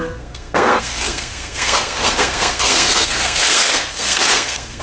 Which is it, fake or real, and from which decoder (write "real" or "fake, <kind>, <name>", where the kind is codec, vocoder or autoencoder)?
fake, codec, SNAC